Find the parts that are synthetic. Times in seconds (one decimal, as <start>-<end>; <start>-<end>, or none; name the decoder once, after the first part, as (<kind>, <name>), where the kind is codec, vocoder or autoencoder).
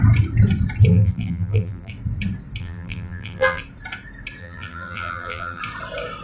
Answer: 0.9-1.9 (vocoder, BigVGAN v2); 2.6-3.6; 4.4-5.6